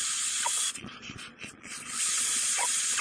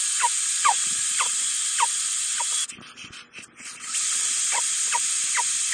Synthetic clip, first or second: first